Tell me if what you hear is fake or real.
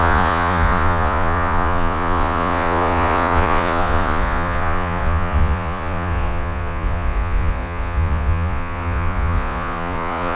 fake